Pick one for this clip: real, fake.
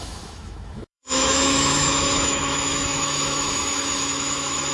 fake